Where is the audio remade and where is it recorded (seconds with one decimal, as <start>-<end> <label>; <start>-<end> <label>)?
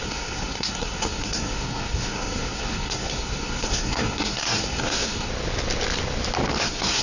0.0-5.3 remade; 5.3-6.6 recorded; 6.6-7.0 remade